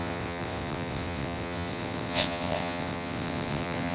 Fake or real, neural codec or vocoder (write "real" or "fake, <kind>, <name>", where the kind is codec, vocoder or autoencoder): fake, vocoder, WaveNeXt